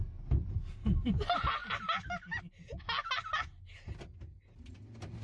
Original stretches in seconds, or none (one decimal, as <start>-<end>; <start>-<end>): 0.0-5.2